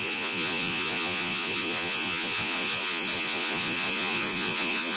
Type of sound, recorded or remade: remade